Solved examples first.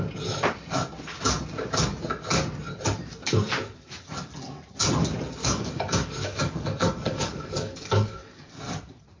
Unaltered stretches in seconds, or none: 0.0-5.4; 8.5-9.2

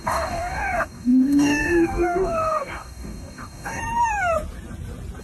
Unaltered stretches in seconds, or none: 3.8-5.2

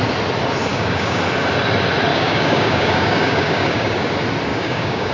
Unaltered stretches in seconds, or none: 0.0-0.7; 1.2-2.1; 4.1-4.5